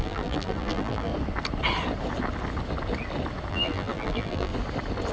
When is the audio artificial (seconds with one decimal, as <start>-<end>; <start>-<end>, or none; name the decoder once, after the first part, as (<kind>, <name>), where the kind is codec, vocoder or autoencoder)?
0.0-1.1 (vocoder, BigVGAN v2); 3.5-4.5